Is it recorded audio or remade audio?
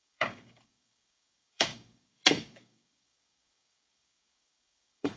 remade